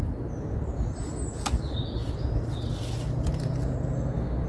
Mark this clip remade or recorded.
recorded